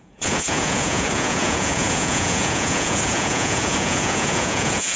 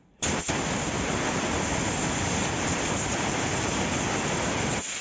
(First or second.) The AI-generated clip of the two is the first